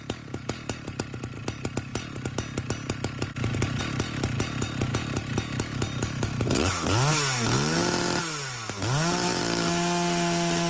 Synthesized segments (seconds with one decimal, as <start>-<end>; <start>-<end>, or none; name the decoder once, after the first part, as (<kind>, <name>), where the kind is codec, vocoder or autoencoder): none